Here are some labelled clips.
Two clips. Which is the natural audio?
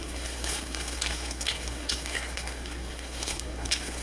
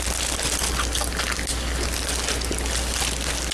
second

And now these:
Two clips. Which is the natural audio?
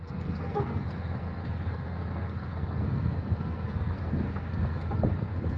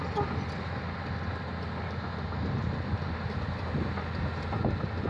second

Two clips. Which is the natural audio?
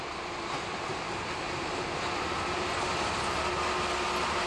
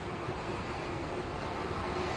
first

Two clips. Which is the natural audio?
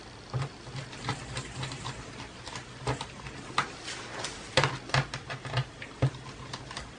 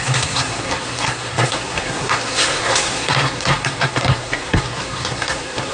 first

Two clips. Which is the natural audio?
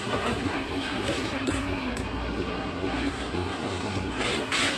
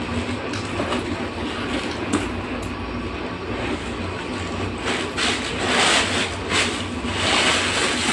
second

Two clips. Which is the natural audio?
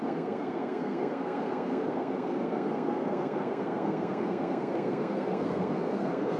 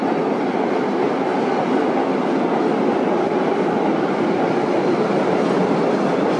second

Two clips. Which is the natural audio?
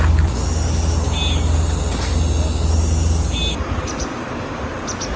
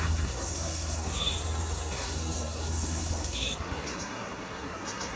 first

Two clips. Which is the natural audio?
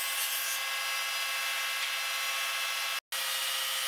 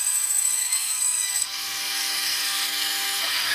first